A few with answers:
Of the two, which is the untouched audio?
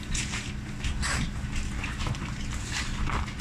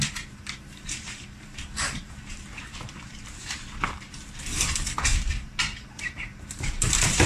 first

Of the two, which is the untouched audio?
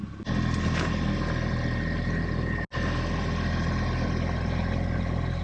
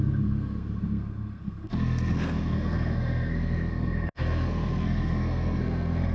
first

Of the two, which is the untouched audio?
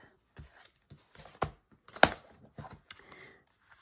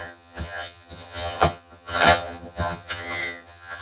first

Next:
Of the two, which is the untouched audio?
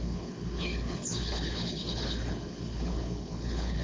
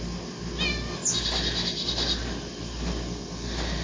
second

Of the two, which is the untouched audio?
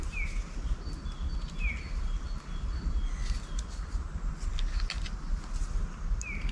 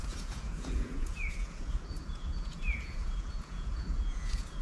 first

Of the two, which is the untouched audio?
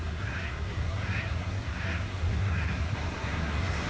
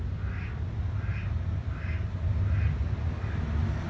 second